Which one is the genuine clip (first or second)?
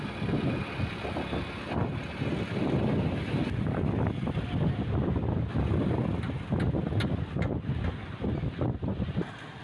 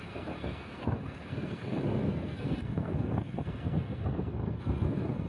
first